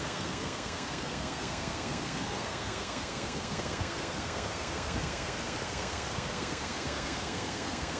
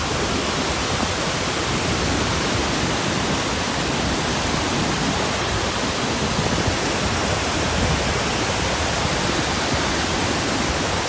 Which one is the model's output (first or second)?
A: first